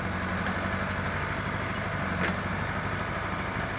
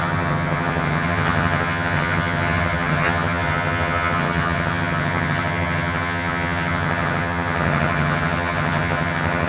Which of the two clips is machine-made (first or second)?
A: second